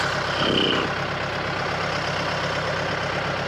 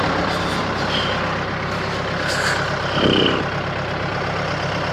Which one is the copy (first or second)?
second